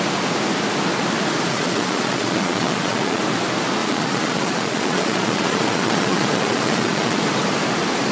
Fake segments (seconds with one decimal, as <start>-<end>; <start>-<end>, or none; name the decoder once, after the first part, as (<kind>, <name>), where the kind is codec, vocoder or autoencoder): 1.5-3.2 (vocoder, Vocos); 3.8-7.2